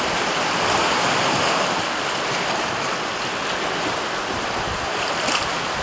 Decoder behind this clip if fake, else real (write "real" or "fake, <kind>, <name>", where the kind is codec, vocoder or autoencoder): real